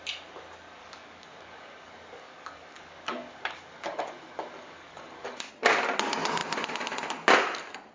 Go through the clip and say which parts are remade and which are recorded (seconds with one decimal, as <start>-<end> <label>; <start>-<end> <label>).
0.0-0.8 recorded; 0.8-5.5 remade; 5.5-7.9 recorded